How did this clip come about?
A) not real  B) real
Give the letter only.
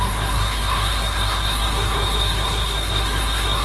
A